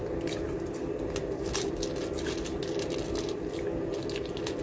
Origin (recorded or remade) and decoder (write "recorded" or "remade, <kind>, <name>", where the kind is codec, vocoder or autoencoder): recorded